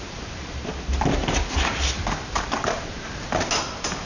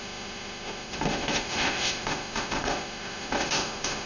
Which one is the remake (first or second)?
second